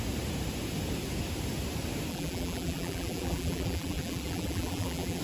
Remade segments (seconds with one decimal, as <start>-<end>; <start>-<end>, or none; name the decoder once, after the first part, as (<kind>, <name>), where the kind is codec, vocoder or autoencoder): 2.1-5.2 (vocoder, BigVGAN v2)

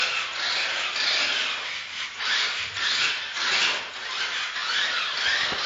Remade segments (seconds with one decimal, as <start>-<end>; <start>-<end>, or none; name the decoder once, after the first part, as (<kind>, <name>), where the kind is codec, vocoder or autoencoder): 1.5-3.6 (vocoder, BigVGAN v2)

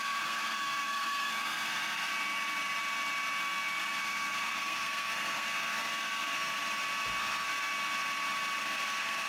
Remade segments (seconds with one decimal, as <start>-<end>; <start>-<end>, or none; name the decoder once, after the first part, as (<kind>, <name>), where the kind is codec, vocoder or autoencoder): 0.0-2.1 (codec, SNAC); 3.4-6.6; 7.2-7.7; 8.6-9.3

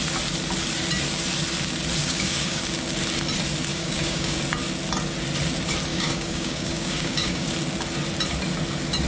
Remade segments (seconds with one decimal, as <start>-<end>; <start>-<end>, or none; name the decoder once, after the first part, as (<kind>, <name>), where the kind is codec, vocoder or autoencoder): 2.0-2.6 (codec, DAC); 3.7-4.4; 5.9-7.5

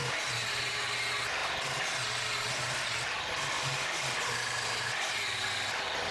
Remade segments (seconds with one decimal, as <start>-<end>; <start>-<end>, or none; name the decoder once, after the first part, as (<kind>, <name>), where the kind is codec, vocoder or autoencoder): 0.0-0.9 (vocoder, BigVGAN v2)

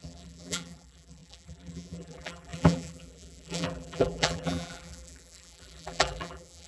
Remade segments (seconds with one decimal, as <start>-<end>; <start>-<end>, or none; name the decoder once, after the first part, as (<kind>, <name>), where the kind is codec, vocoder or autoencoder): 0.0-6.7 (vocoder, BigVGAN v2)

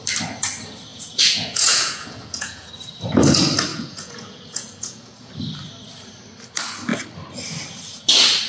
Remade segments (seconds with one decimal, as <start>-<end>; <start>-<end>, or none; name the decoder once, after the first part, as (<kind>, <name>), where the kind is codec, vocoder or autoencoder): 0.9-2.7 (vocoder, Vocos); 3.7-5.3